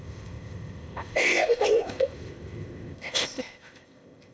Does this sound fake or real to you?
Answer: fake